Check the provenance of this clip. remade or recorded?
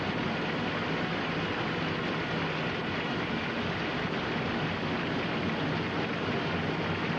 recorded